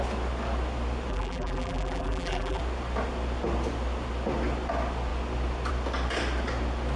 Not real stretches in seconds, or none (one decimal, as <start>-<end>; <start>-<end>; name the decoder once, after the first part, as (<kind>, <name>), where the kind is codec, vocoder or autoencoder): 1.1-2.6 (vocoder, BigVGAN v2)